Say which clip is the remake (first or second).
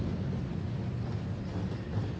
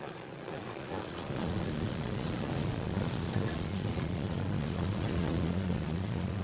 second